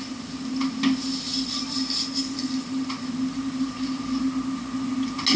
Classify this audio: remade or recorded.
recorded